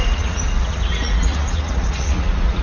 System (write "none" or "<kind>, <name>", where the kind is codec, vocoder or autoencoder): vocoder, Vocos